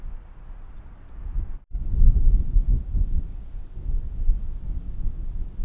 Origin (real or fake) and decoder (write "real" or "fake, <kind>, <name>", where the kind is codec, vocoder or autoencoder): real